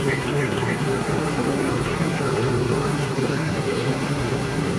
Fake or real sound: fake